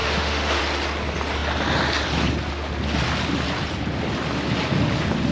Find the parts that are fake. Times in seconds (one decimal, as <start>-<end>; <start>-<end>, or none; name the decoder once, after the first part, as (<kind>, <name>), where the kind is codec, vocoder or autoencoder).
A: 0.0-0.6 (autoencoder, DAC-VAE)